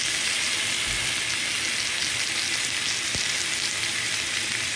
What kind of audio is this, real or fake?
real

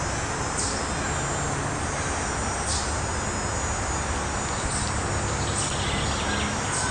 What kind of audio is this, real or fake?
real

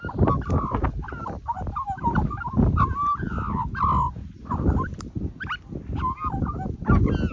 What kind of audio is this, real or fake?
real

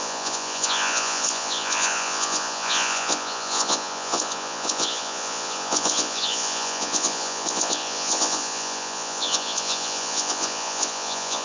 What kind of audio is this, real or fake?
fake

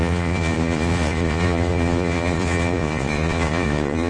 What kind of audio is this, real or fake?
fake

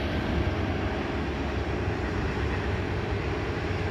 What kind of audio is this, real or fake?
real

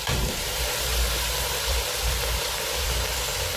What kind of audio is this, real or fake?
fake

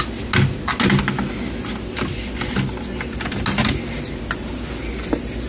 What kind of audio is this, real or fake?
real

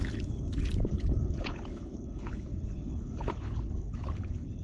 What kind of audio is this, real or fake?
fake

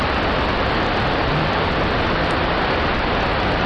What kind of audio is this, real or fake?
real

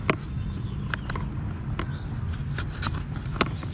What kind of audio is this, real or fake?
real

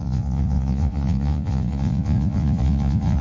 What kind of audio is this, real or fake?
fake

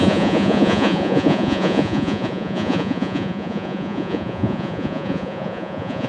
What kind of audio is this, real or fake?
fake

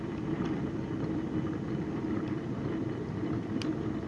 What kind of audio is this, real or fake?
real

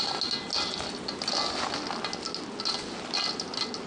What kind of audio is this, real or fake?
real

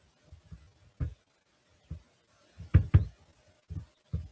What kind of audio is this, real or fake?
real